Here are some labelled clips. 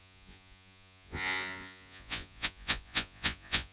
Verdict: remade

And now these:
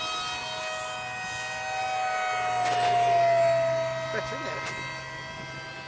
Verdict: recorded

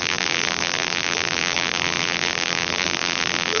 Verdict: remade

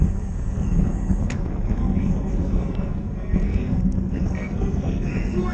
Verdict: remade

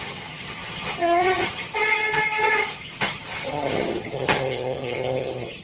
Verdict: remade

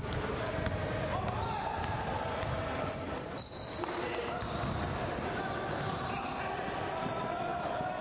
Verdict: recorded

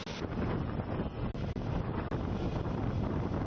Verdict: recorded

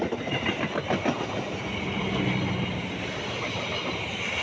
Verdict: recorded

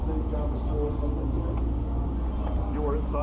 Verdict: recorded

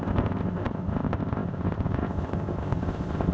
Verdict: remade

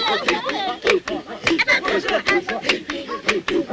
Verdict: recorded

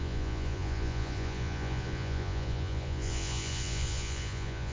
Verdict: remade